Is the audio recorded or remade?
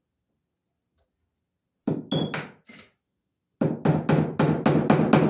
recorded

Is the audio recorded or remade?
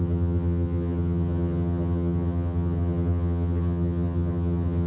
remade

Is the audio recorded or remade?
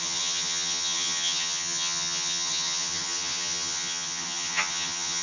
remade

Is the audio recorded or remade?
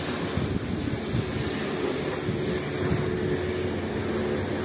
recorded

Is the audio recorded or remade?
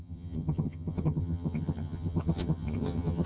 remade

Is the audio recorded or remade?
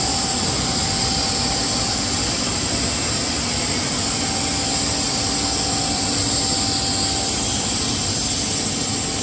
recorded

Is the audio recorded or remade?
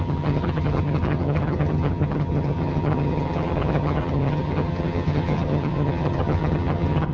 remade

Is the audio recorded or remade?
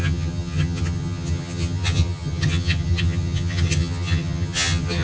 remade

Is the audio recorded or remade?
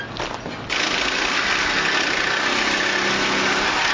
recorded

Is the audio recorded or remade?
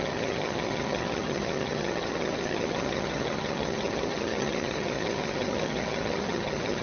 remade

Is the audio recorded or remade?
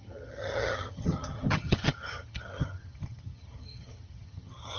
remade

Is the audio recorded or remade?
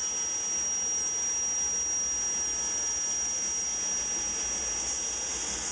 recorded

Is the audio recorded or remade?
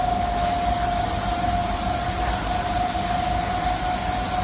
recorded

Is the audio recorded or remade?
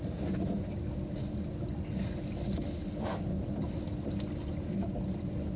recorded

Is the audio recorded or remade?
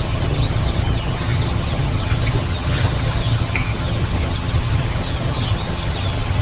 remade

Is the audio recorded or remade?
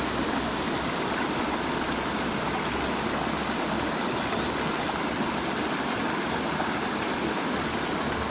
recorded